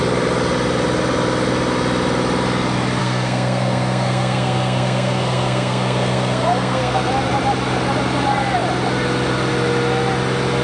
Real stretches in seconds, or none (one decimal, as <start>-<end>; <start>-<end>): 0.0-3.0; 7.1-10.6